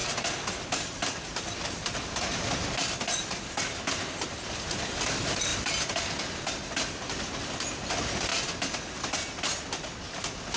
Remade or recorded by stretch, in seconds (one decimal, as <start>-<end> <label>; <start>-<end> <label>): 0.0-10.6 recorded